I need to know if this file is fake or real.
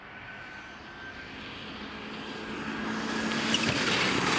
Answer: real